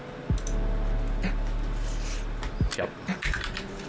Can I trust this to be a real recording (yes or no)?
yes